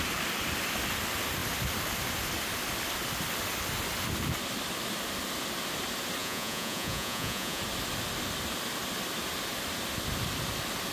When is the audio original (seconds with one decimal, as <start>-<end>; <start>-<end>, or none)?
0.0-6.2; 7.6-10.9